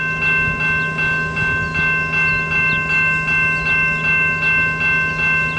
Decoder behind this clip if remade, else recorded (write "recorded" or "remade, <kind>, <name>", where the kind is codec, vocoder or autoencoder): recorded